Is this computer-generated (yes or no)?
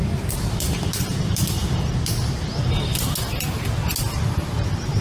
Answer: no